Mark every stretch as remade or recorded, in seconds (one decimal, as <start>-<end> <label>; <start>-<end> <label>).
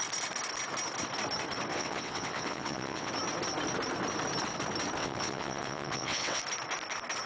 0.0-1.7 recorded; 1.7-3.1 remade; 3.1-5.0 recorded; 5.0-6.4 remade; 6.4-7.3 recorded